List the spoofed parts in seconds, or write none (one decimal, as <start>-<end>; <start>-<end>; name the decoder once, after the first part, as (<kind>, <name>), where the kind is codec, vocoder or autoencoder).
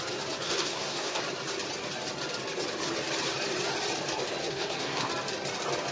0.4-1.2 (codec, SNAC); 4.4-5.1